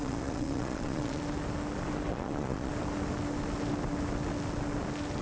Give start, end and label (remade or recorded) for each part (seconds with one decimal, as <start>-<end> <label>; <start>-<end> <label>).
0.0-1.2 remade; 1.2-2.1 recorded; 2.1-2.7 remade; 2.7-5.2 recorded